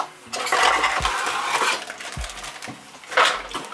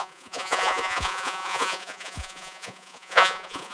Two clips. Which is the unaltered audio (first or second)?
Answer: first